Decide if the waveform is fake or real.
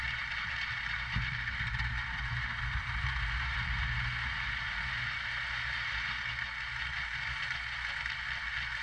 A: real